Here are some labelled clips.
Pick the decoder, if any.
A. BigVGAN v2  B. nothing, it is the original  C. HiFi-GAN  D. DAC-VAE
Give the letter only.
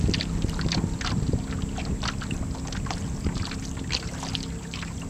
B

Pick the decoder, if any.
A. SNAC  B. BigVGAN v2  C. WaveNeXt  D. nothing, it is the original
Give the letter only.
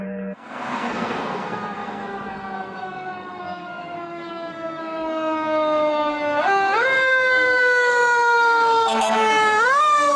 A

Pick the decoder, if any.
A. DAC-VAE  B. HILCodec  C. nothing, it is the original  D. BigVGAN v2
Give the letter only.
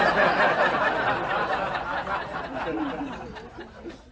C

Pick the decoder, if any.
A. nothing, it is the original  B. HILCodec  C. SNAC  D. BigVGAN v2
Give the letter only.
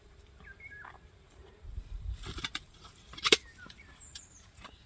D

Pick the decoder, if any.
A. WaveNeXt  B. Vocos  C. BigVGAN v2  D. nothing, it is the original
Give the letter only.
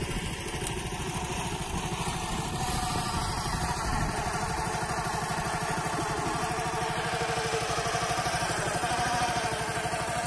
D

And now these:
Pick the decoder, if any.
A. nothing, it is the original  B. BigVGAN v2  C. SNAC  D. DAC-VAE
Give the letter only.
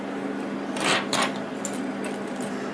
A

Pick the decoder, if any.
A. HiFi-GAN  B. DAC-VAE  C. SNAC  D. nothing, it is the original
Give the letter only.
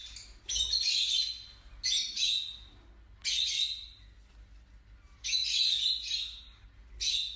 D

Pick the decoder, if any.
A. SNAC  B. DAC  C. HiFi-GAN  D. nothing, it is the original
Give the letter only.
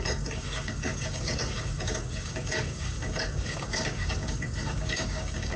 B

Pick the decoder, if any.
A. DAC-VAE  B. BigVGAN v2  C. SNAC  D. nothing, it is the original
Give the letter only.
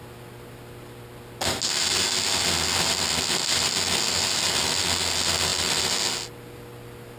D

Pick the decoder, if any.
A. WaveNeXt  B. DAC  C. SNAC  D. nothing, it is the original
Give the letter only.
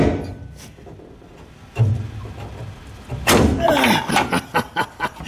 D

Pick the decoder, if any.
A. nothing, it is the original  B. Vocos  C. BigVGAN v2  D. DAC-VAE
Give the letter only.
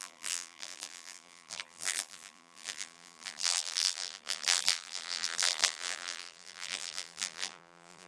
C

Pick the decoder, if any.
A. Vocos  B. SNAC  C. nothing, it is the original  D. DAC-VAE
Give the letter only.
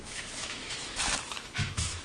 D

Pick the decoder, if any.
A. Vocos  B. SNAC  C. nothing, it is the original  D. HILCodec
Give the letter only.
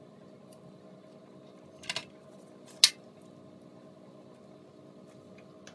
C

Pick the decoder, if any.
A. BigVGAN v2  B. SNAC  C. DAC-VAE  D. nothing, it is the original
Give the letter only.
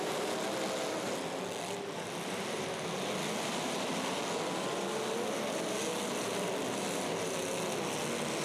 D